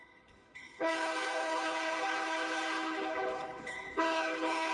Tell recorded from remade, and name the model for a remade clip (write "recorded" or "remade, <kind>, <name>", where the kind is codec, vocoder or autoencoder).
remade, codec, HILCodec